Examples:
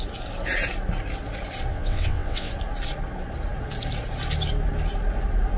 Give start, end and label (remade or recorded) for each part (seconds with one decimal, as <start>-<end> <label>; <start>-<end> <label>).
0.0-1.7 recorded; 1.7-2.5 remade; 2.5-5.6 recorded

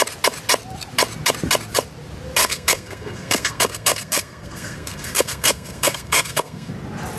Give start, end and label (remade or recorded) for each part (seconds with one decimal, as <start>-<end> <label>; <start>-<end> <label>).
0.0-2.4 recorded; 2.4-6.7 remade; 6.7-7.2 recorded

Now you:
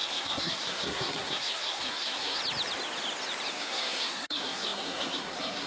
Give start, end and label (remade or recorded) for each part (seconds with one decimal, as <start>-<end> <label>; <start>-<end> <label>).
0.0-2.4 remade; 2.4-3.5 recorded; 3.5-5.7 remade

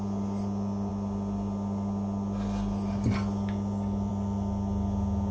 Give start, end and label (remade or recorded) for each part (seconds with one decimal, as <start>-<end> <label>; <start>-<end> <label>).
0.0-5.3 recorded